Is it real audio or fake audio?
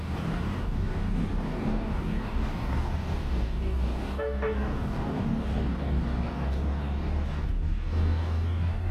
fake